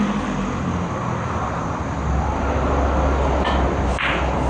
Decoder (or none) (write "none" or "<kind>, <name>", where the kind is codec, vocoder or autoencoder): none